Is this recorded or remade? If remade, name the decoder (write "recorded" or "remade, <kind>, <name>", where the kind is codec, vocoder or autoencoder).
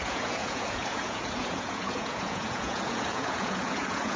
remade, vocoder, Vocos